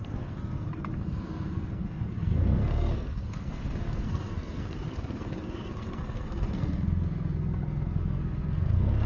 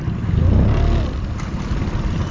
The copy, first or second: first